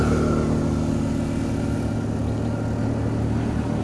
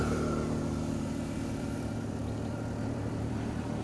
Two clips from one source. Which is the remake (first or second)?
second